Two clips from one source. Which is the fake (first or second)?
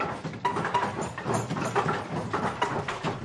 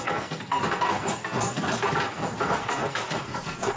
second